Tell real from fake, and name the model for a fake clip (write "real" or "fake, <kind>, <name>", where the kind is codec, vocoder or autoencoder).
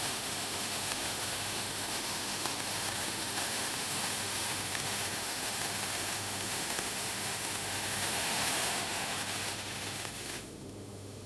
fake, autoencoder, DAC-VAE